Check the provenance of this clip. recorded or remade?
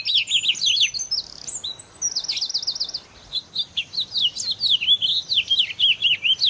recorded